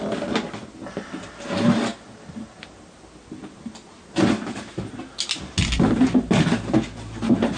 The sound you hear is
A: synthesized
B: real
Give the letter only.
B